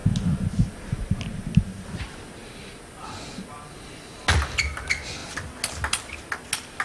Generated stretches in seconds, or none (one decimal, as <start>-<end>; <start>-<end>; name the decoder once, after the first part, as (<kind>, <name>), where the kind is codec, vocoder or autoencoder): none